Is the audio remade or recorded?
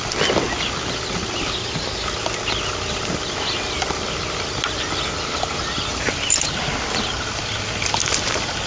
recorded